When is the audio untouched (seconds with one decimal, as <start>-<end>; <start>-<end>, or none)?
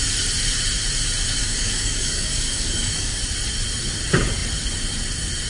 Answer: 0.0-1.4; 3.2-5.5